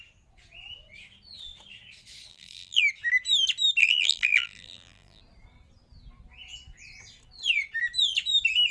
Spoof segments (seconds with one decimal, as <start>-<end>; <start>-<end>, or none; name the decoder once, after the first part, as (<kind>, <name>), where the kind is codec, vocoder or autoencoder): 2.3-2.8 (vocoder, BigVGAN v2); 3.8-5.2